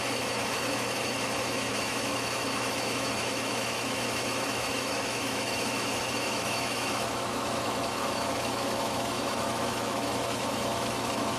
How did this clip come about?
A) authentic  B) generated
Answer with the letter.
B